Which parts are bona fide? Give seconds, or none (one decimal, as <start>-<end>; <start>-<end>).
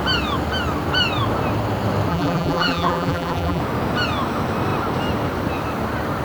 0.0-2.1; 3.6-6.2